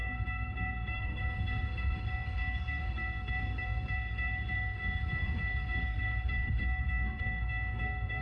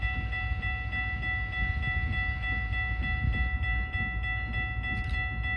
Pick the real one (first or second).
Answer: second